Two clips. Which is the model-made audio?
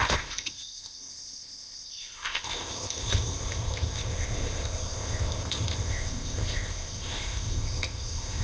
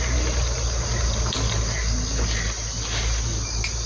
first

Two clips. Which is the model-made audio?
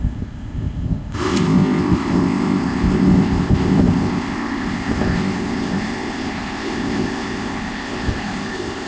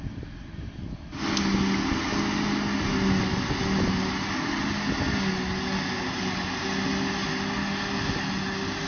first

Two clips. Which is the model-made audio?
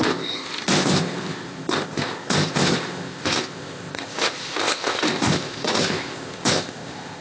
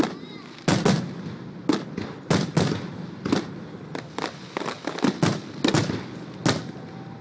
first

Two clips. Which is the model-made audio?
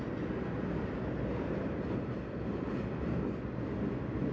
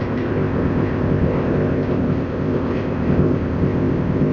second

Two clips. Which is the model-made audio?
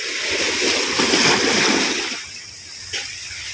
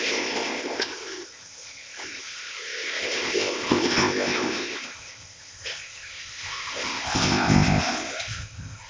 second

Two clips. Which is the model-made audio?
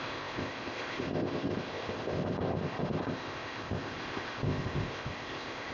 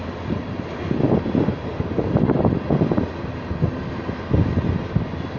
first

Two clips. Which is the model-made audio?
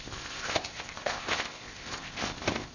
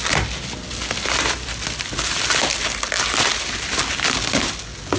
first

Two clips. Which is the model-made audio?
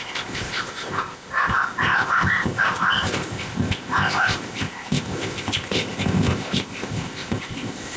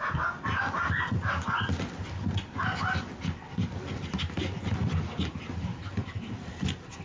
first